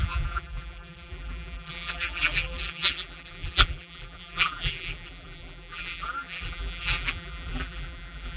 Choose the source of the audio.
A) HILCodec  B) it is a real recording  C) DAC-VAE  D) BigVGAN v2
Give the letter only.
D